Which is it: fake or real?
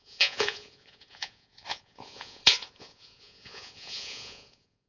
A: fake